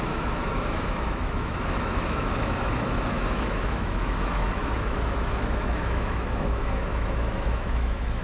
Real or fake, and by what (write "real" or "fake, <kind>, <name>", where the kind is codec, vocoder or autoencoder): fake, autoencoder, DAC-VAE